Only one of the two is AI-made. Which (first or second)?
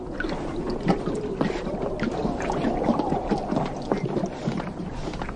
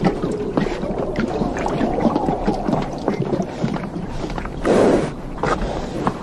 second